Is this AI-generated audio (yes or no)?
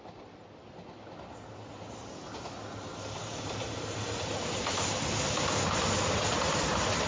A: no